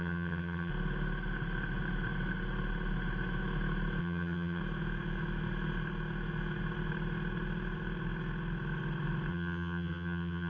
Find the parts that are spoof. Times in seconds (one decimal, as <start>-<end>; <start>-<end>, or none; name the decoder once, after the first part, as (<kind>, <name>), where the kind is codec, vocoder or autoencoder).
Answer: 0.0-0.7 (vocoder, HiFi-GAN); 4.0-4.6; 9.3-10.5